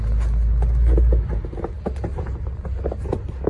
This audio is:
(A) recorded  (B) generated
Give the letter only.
A